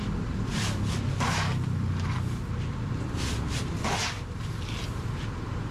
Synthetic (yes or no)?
no